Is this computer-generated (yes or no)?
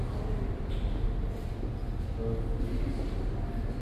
no